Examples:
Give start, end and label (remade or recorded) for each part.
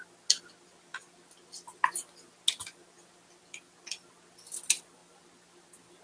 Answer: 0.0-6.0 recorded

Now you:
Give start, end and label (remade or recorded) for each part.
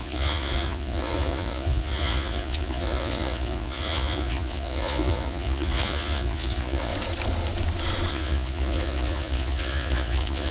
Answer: 0.0-6.9 remade; 6.9-8.1 recorded; 8.1-10.5 remade